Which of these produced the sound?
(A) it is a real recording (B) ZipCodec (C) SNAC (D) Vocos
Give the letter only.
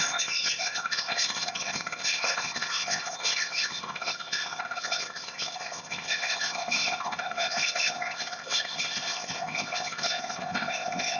B